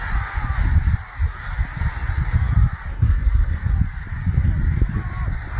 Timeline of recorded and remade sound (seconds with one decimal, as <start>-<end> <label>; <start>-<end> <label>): 0.0-2.9 recorded; 2.9-3.7 remade; 3.7-5.6 recorded